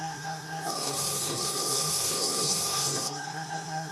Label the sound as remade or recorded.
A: remade